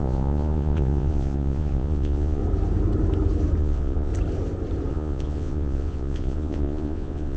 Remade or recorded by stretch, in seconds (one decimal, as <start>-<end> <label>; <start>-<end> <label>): 0.0-2.4 remade; 2.4-3.6 recorded; 3.6-4.1 remade; 4.1-4.9 recorded; 4.9-7.4 remade